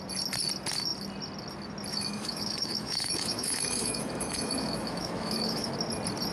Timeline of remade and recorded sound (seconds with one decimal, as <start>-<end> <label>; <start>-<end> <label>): 0.0-1.9 recorded; 1.9-5.7 remade; 5.7-6.3 recorded